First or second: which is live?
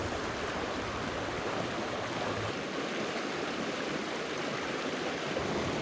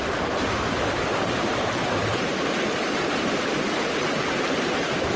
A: first